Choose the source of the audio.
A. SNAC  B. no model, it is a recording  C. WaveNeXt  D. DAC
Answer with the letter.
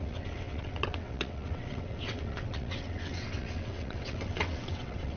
C